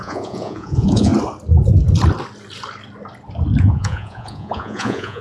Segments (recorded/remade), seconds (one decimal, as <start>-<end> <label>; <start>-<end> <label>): 0.0-1.1 remade; 1.1-3.6 recorded; 3.6-5.2 remade